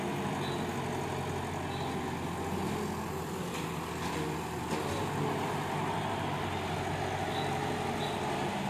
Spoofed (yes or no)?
no